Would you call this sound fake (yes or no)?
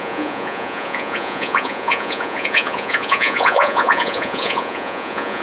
yes